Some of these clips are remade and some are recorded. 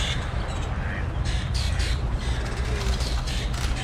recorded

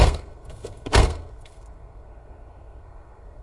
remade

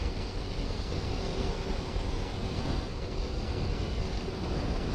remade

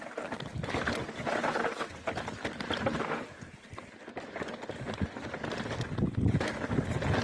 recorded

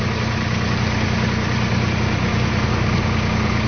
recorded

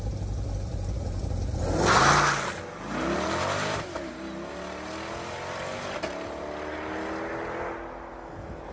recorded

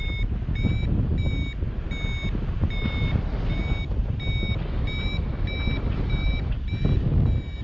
recorded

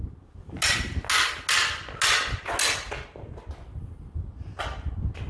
recorded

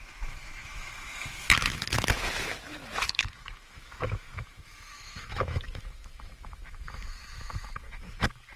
remade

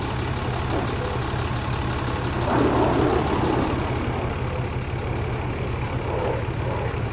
recorded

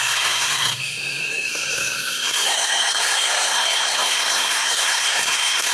remade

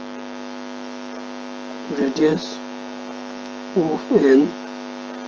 recorded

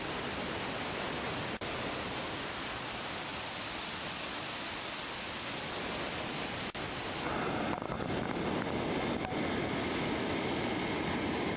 recorded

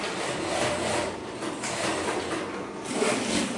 recorded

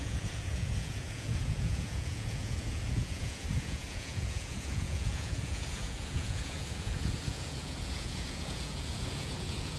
remade